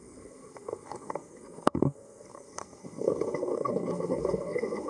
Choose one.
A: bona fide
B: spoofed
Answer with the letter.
B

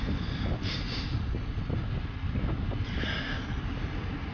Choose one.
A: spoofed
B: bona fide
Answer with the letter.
B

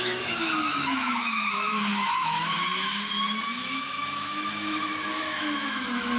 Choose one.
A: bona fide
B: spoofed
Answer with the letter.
B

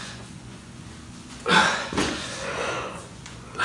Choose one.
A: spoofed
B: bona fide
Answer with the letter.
A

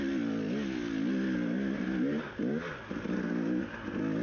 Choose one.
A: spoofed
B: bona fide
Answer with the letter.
B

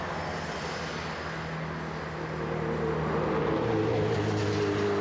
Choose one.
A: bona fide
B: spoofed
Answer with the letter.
A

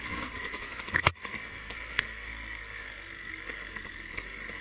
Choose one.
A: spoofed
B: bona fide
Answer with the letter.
A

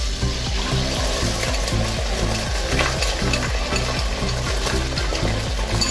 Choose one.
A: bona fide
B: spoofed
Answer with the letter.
A